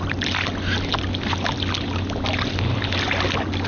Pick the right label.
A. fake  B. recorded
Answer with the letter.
B